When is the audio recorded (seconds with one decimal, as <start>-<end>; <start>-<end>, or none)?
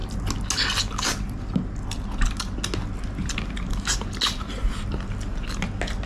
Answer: 0.0-6.1